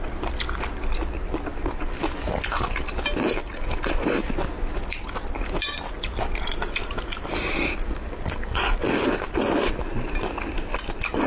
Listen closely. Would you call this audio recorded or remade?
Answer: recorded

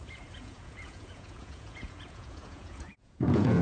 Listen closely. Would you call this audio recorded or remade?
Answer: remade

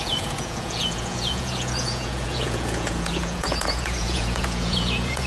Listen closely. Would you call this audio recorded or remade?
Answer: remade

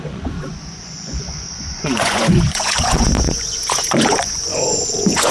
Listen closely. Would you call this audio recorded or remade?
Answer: remade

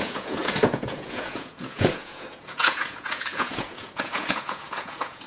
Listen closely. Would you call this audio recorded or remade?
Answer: remade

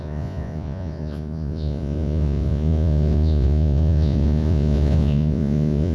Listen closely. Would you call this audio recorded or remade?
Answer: remade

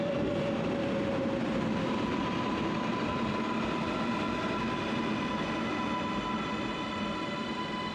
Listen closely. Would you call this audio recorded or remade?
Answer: recorded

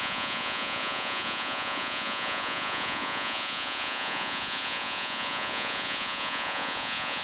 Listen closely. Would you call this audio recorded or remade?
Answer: remade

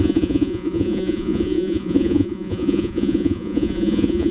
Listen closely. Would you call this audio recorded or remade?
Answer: remade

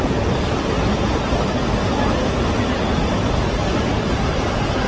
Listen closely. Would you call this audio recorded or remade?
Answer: recorded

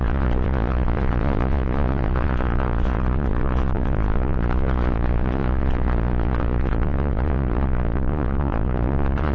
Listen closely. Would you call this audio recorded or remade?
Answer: remade